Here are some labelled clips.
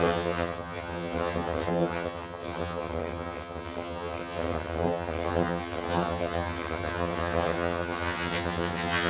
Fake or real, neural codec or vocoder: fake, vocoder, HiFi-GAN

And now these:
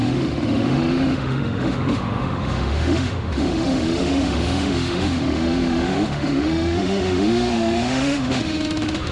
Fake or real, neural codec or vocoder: fake, autoencoder, DAC-VAE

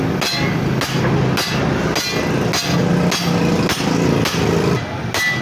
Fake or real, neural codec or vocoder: real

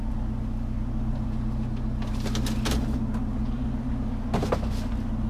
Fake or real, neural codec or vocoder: real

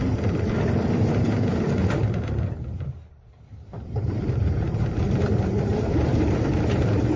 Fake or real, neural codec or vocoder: fake, vocoder, BigVGAN v2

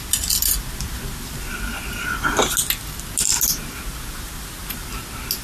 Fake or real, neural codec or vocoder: real